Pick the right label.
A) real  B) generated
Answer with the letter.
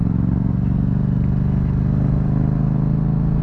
A